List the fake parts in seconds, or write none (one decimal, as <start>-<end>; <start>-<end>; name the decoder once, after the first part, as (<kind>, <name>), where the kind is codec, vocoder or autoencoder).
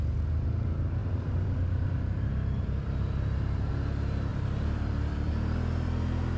1.0-3.7 (vocoder, BigVGAN v2); 4.3-5.3